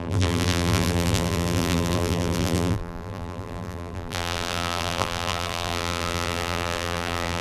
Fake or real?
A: fake